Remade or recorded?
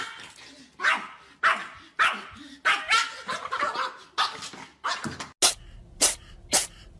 recorded